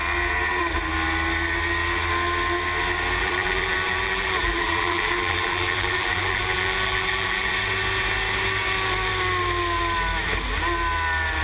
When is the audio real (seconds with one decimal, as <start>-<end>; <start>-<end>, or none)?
0.0-3.2; 7.5-11.4